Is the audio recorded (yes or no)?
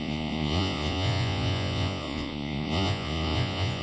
no